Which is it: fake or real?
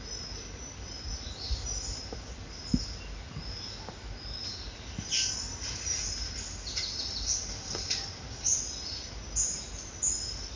real